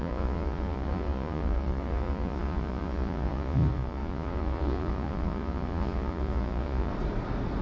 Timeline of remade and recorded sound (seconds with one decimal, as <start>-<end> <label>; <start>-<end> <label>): 0.0-6.9 remade; 6.9-7.6 recorded